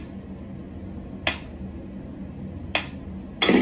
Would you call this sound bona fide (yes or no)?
yes